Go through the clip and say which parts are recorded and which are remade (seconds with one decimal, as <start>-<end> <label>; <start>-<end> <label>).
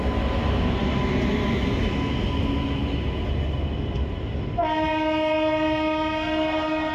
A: 0.0-6.9 recorded